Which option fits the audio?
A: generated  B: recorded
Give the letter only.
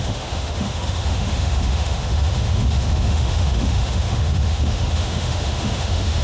A